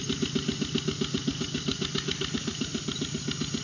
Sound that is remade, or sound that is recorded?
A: recorded